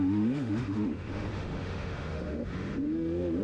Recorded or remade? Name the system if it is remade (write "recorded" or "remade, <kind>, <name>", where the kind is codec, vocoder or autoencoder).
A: remade, autoencoder, DAC-VAE